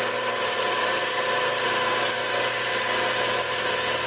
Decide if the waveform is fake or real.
real